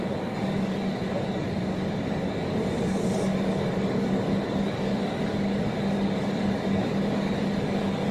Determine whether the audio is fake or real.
fake